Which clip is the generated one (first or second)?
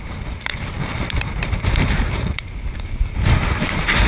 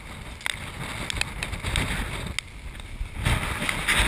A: first